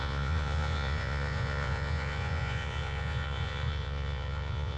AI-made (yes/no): yes